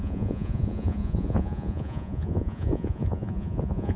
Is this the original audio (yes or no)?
no